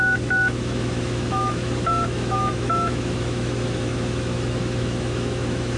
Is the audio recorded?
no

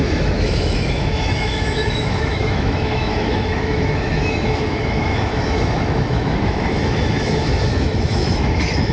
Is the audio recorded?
no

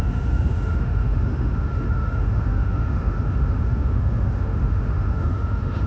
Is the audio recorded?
no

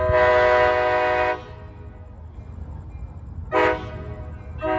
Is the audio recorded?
yes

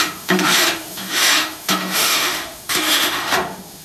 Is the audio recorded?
no